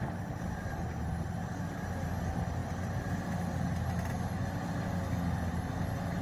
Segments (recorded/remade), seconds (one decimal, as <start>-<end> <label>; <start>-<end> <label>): 0.0-6.2 recorded